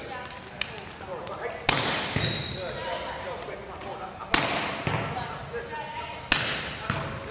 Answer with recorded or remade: recorded